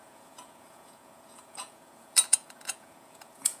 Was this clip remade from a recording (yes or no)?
yes